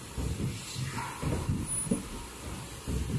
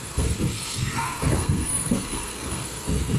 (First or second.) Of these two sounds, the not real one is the second